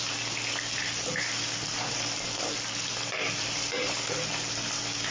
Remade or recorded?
recorded